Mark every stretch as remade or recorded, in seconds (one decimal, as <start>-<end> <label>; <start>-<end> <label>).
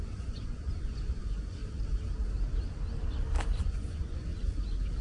0.0-1.6 remade; 1.6-3.6 recorded; 3.6-4.3 remade; 4.3-5.0 recorded